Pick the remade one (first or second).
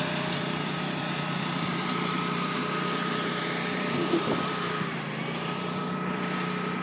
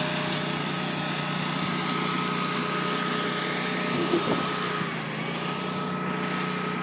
first